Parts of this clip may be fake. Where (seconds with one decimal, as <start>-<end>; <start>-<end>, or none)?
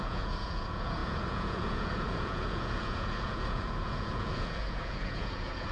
0.0-5.7